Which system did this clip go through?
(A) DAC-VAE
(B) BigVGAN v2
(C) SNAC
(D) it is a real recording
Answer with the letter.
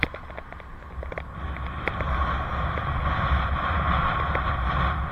D